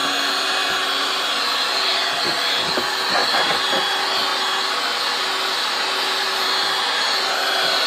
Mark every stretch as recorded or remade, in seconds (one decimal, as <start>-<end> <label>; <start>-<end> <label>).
0.0-7.9 recorded

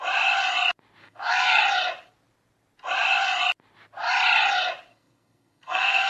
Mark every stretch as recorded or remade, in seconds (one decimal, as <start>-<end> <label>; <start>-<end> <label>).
0.0-1.0 recorded; 1.0-1.6 remade; 1.6-4.9 recorded; 4.9-6.1 remade

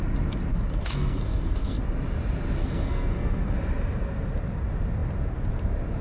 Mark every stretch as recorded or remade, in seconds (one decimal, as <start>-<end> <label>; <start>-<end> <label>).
0.0-0.5 recorded; 0.5-1.8 remade; 1.8-2.6 recorded; 2.6-3.5 remade; 3.5-6.0 recorded

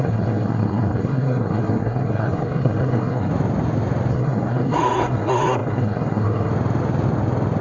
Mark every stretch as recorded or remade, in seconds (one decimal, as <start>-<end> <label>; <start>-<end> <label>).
0.0-3.3 remade; 3.3-4.1 recorded; 4.1-6.5 remade; 6.5-7.6 recorded

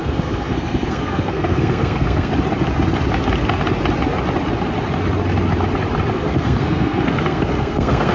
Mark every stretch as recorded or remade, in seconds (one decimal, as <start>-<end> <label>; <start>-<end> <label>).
0.0-2.3 remade; 2.3-6.1 recorded; 6.1-8.1 remade